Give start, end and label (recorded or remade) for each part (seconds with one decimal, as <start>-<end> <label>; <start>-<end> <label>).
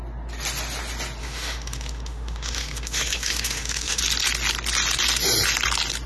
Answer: 0.0-1.2 recorded; 1.2-4.0 remade; 4.0-6.1 recorded